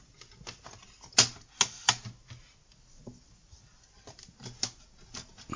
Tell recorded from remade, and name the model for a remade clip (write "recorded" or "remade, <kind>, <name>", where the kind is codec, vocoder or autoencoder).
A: recorded